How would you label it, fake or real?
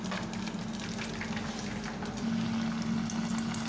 real